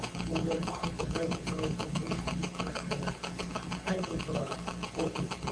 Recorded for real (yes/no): no